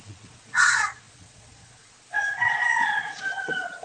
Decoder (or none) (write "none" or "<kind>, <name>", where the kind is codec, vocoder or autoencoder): vocoder, Vocos